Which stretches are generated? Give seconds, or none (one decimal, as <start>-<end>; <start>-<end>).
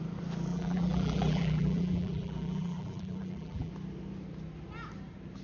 0.5-3.7